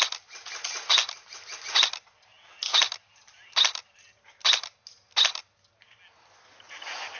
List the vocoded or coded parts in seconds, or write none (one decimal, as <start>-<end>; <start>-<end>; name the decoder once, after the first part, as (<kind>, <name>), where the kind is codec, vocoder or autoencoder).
none